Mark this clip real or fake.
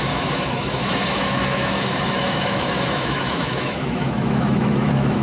fake